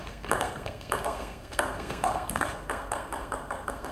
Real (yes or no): no